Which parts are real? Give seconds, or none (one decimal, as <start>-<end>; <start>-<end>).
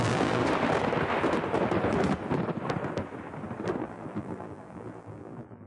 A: 0.4-3.8